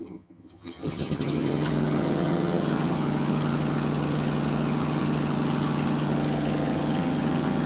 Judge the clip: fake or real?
fake